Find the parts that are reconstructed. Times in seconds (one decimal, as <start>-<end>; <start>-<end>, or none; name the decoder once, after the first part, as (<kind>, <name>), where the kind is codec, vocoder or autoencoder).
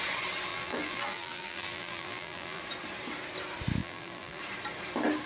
0.5-2.6 (vocoder, BigVGAN v2); 3.8-4.4